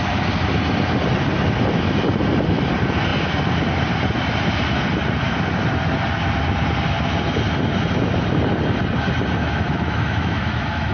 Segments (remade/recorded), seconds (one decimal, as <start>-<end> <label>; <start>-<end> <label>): 0.0-9.4 recorded; 9.4-10.9 remade